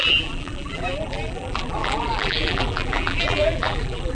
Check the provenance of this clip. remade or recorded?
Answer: remade